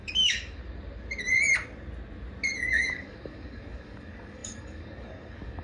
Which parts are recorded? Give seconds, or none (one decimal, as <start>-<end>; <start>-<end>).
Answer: 0.6-2.7

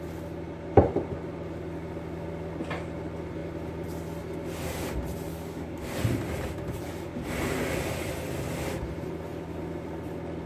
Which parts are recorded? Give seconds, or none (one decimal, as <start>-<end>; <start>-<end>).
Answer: 0.0-5.3; 5.8-10.5